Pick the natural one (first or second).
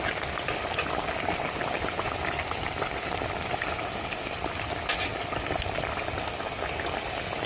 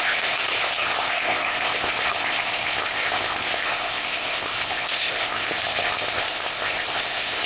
first